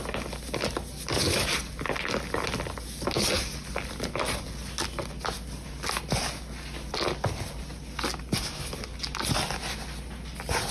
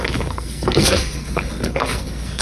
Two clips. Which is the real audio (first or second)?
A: first